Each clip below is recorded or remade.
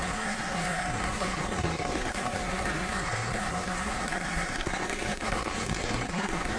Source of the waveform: remade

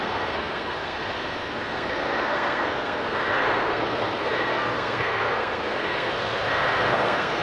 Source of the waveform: remade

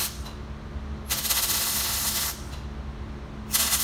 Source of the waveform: recorded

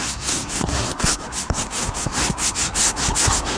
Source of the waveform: remade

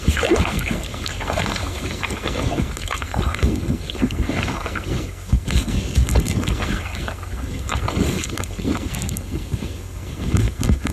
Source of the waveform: remade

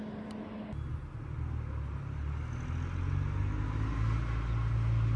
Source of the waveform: recorded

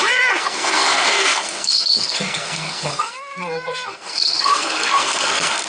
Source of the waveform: remade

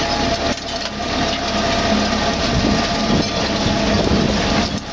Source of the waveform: recorded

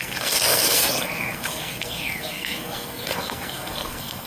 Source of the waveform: remade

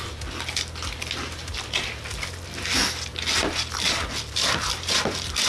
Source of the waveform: recorded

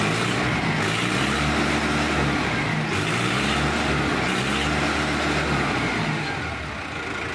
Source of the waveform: recorded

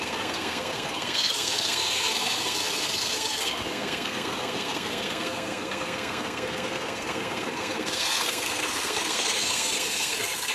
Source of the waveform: remade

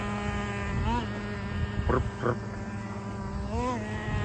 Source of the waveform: recorded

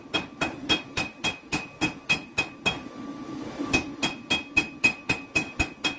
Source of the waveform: recorded